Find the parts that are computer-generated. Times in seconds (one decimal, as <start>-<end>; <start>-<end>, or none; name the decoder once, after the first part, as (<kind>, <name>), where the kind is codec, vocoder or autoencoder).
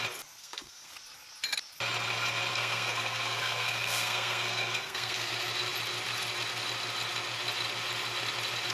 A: 0.4-0.9 (codec, SNAC); 2.5-5.3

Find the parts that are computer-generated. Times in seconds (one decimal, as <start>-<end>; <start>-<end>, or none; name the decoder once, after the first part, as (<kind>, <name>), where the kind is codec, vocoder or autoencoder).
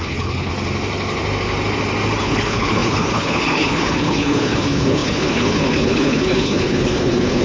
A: 0.0-0.5 (codec, HILCodec); 2.2-7.4